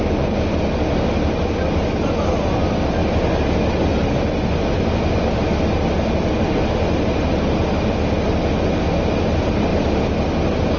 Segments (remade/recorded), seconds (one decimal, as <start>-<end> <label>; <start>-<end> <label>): 0.0-10.8 recorded